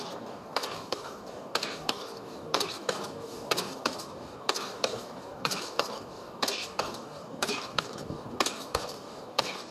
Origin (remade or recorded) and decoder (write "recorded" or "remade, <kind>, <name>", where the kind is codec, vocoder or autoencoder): remade, codec, DAC